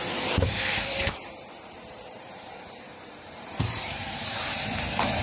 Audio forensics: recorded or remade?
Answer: remade